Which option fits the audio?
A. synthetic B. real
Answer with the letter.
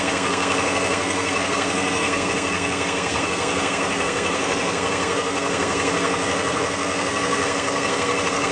A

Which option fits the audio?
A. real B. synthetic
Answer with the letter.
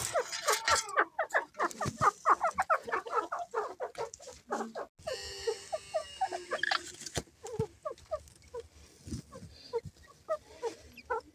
A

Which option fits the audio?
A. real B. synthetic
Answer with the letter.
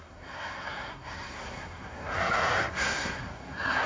B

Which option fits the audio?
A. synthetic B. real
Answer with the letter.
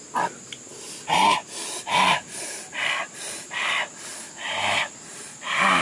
B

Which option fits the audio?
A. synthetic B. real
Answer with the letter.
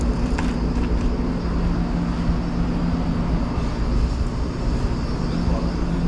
B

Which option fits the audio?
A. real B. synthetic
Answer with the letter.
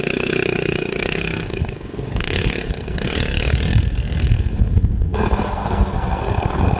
B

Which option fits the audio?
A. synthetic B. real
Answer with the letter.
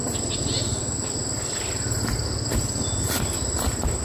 B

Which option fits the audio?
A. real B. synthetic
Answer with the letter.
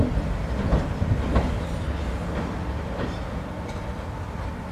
A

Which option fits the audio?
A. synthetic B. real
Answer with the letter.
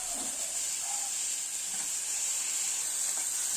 B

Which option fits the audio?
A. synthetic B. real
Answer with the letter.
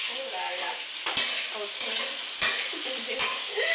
B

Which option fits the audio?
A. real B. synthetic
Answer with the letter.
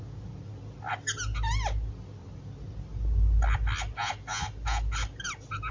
A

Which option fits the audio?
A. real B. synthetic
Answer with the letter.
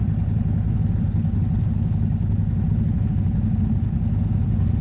A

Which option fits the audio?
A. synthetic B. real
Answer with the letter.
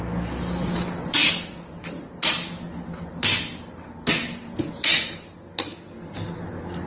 B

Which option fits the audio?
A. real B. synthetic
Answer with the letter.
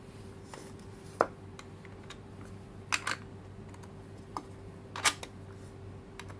A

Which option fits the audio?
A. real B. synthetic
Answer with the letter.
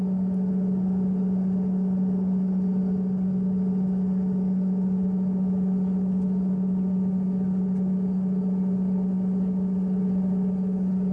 A